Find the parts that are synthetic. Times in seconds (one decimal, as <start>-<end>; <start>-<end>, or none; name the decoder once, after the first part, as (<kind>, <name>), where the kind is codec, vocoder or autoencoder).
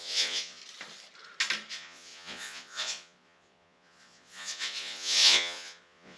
0.0-0.6 (vocoder, Vocos); 1.7-6.2